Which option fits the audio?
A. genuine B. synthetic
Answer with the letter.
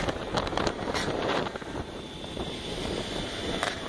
B